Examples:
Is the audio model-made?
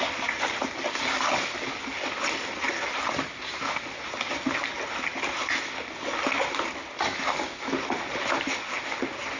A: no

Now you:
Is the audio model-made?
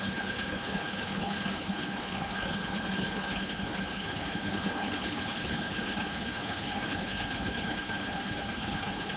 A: yes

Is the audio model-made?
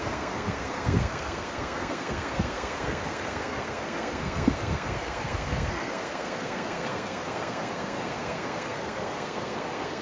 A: yes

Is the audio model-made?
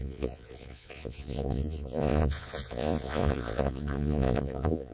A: yes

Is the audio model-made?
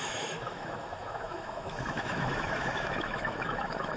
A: yes